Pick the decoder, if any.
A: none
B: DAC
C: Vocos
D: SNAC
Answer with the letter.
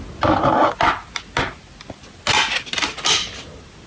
A